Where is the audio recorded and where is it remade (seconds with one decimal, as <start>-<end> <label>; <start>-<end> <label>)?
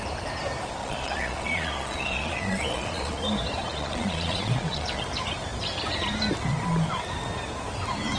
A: 0.0-0.8 recorded; 0.8-3.2 remade; 3.2-3.7 recorded; 3.7-5.0 remade; 5.0-8.2 recorded